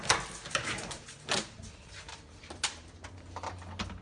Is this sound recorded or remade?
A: recorded